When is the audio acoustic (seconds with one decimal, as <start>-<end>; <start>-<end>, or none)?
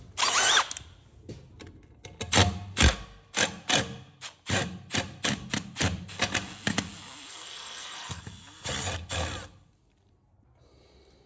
0.0-7.3; 8.2-11.3